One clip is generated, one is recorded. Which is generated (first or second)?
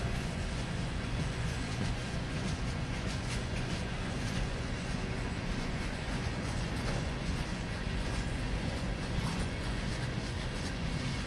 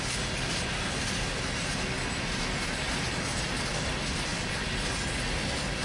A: first